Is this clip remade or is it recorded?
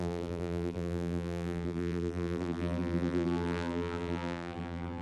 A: remade